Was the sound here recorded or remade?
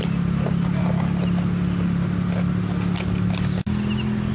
recorded